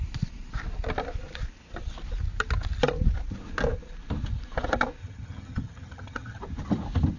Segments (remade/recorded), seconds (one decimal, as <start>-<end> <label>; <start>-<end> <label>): 0.0-5.0 recorded; 5.0-6.4 remade; 6.4-7.2 recorded